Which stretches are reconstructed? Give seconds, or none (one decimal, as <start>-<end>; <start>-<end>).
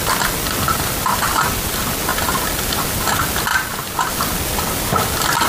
none